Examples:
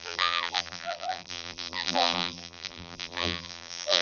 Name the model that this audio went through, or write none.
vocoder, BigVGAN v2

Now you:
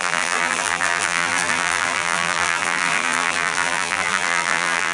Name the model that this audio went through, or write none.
vocoder, BigVGAN v2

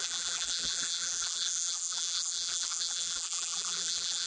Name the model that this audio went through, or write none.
vocoder, BigVGAN v2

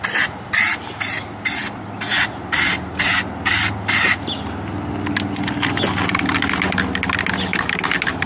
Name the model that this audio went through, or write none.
none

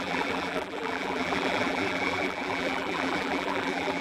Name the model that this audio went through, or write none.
vocoder, BigVGAN v2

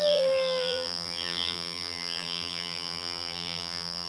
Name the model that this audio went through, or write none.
vocoder, BigVGAN v2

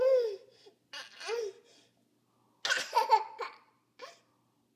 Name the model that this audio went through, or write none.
none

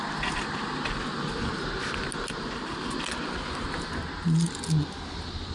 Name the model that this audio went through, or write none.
none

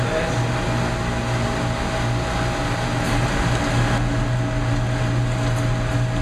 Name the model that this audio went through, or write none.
none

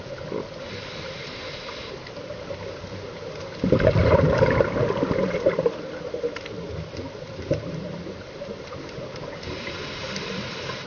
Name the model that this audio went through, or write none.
vocoder, BigVGAN v2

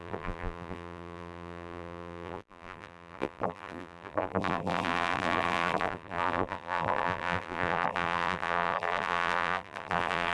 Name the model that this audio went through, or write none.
vocoder, BigVGAN v2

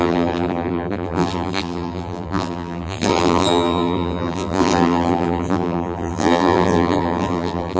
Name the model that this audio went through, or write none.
vocoder, BigVGAN v2